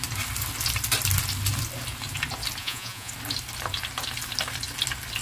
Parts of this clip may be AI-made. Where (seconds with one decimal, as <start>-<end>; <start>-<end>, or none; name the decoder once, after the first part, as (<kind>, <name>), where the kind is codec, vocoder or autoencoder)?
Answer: 2.6-3.1 (vocoder, Vocos)

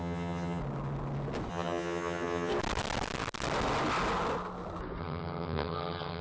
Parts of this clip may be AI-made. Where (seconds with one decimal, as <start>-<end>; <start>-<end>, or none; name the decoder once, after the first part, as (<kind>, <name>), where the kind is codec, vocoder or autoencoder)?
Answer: 0.0-0.6 (vocoder, HiFi-GAN); 1.5-2.5; 5.0-6.2

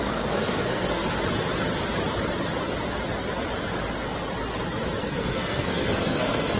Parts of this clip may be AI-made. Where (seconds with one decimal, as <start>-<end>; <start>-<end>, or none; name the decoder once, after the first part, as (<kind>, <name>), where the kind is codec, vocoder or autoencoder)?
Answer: 0.0-1.0 (codec, SNAC); 5.0-6.6

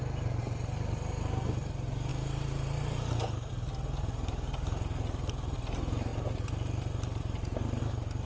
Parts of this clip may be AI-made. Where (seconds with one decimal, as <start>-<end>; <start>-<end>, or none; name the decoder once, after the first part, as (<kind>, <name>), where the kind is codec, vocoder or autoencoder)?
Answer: 2.1-3.5 (vocoder, BigVGAN v2)

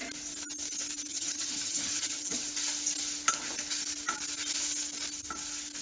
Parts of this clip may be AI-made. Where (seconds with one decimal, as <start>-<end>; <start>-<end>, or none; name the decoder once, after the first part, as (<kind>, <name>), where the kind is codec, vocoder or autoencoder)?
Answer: 1.1-2.4 (vocoder, HiFi-GAN)